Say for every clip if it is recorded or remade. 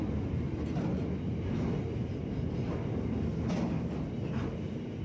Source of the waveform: recorded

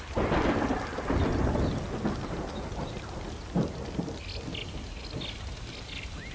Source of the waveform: recorded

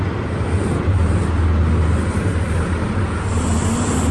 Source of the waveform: recorded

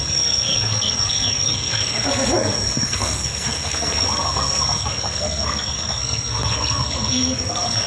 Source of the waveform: remade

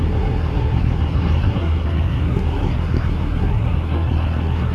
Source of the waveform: remade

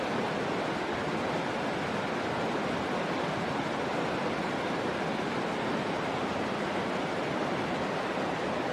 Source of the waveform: recorded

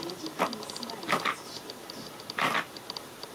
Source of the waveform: recorded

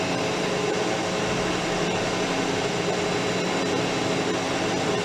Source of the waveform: recorded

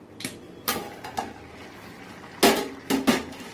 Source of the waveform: recorded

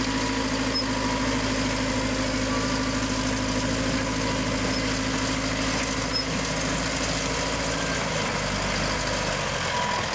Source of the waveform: recorded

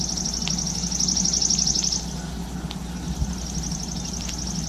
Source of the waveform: recorded